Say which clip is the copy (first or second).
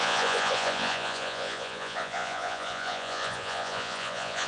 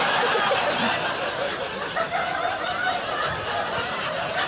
first